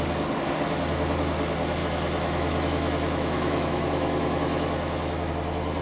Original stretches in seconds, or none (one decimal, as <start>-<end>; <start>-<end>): 0.0-1.8; 5.3-5.8